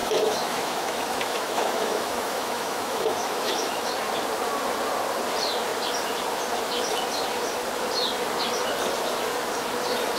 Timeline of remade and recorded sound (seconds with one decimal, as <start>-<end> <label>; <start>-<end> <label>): 0.0-3.9 remade; 3.9-10.2 recorded